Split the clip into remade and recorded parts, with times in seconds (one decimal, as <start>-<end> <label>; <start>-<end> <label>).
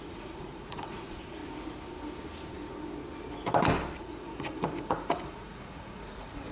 0.0-1.4 remade; 1.4-4.0 recorded; 4.0-6.5 remade